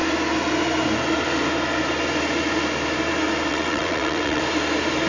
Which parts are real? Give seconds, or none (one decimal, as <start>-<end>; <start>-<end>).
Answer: 0.0-3.5; 4.4-5.1